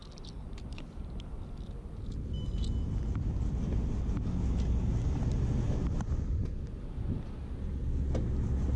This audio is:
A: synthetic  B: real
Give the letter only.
B